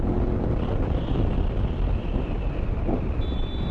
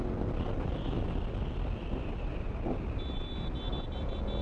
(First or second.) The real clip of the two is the second